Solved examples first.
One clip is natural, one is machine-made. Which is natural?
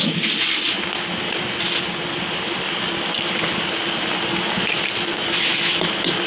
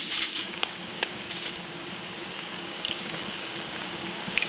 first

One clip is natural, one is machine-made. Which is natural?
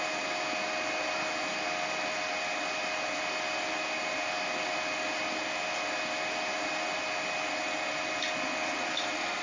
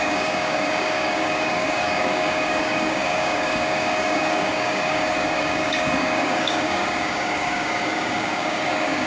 first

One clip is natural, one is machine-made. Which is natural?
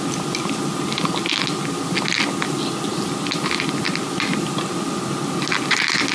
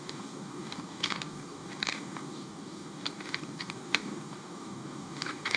first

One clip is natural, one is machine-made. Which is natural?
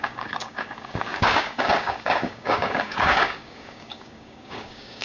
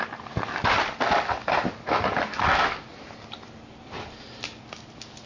second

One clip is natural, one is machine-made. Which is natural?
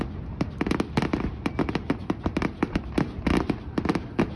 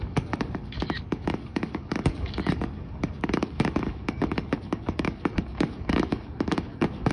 first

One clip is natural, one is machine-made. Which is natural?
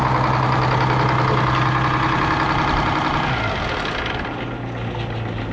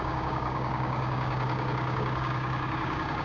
first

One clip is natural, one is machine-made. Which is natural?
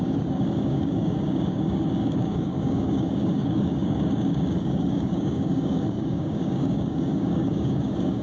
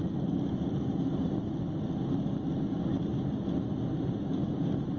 second